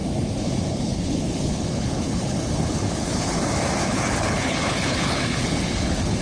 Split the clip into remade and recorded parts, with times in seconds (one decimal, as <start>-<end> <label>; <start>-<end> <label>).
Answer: 0.0-0.7 recorded; 0.7-3.4 remade; 3.4-3.9 recorded; 3.9-6.2 remade